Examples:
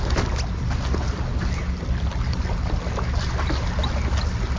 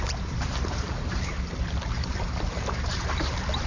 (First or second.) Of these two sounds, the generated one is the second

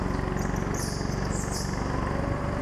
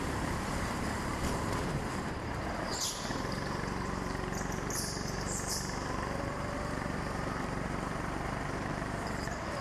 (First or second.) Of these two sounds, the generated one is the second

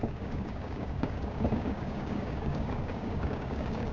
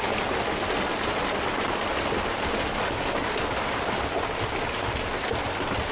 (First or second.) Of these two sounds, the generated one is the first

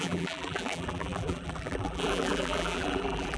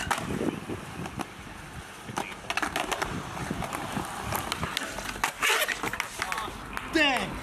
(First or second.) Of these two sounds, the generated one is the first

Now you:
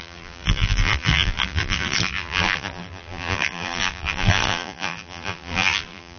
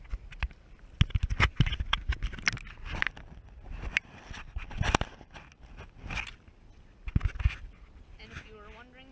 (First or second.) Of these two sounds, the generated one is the first